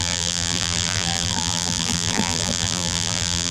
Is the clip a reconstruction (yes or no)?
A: yes